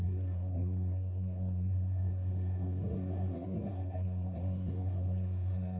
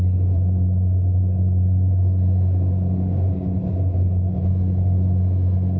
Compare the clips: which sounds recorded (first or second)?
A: second